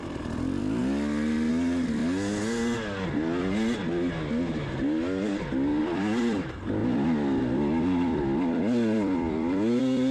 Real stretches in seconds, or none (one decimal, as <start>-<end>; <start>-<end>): 2.0-5.8